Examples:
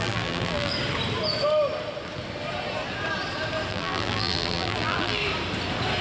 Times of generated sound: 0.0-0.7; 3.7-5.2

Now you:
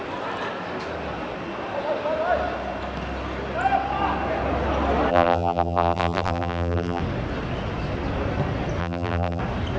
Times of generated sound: 5.1-7.0; 8.8-9.4

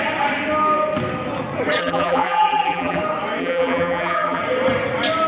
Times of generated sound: 1.8-3.0; 3.4-4.4